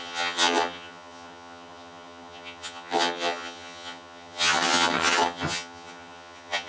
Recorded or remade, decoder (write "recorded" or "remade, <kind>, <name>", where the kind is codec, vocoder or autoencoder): remade, vocoder, HiFi-GAN